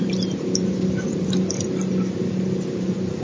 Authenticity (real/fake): real